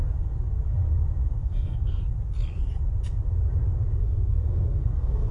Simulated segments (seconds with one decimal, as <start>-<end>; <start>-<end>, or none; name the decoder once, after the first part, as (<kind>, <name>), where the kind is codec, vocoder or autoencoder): 1.4-2.0 (codec, SNAC); 4.0-5.3